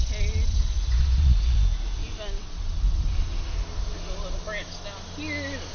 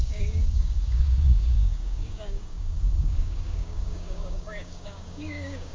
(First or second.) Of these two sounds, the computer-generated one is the second